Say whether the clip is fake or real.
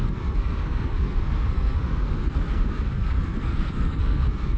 fake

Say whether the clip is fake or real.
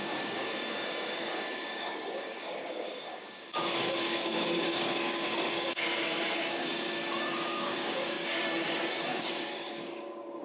fake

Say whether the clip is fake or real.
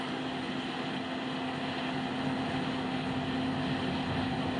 real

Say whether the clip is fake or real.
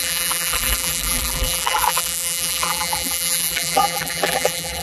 fake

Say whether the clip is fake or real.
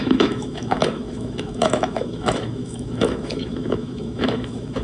fake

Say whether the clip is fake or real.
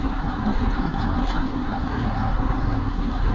fake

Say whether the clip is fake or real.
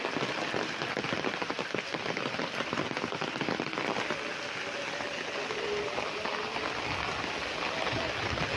real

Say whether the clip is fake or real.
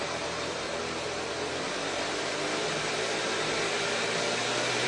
fake